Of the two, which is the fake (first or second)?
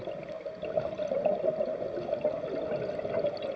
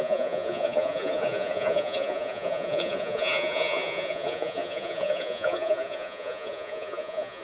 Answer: second